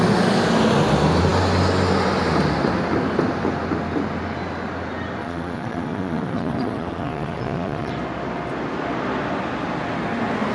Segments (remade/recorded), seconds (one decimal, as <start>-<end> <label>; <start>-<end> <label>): 0.0-5.2 recorded; 5.2-7.9 remade; 7.9-10.5 recorded